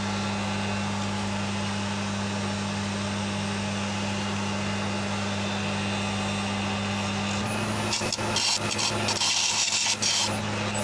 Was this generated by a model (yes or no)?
no